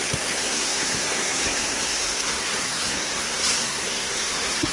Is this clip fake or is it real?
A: fake